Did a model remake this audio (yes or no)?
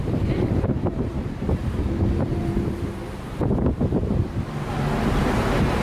yes